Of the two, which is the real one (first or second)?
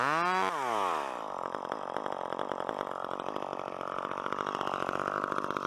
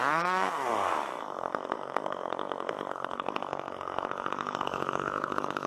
first